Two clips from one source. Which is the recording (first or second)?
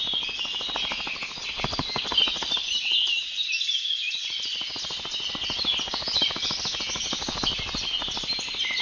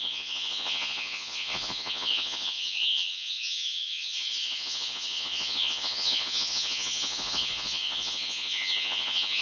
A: first